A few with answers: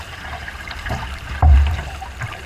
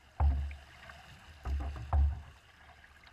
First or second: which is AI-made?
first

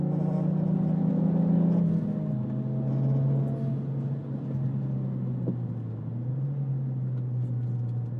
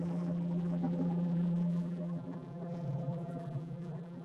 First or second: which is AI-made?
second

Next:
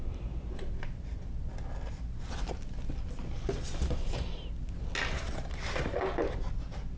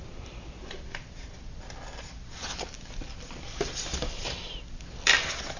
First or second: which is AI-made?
second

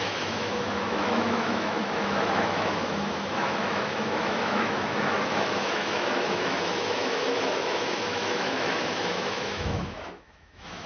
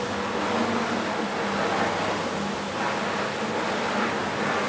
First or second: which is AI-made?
first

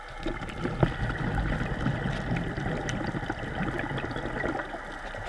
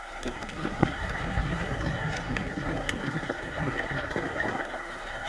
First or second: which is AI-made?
second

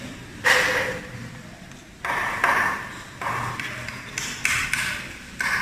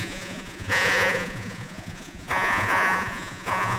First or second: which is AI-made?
second